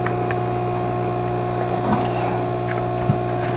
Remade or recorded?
recorded